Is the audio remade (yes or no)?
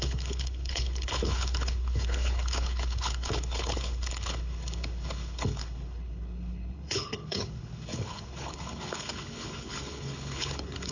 yes